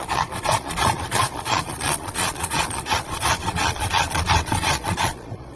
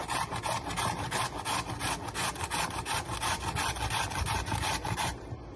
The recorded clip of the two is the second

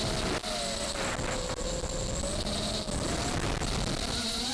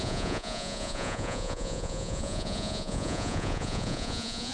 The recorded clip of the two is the first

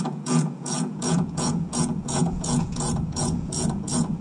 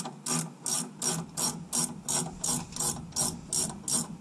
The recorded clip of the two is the second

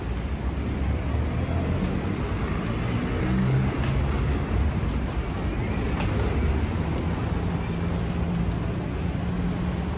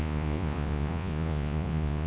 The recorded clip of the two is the first